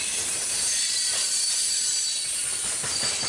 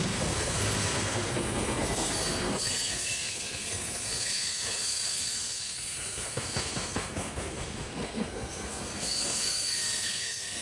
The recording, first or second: first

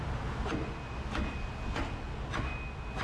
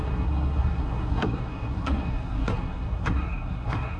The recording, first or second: first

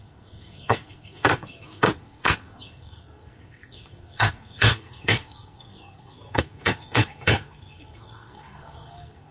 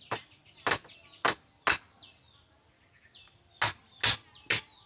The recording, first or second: second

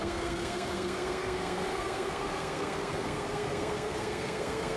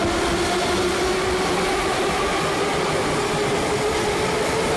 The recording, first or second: second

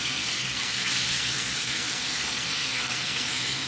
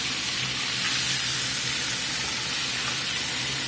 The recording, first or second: second